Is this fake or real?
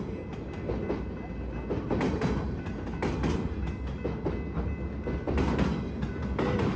real